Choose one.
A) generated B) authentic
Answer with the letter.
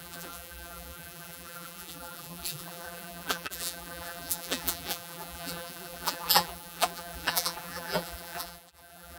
A